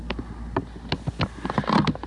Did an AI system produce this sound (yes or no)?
no